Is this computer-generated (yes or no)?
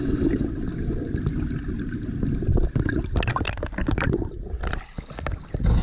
no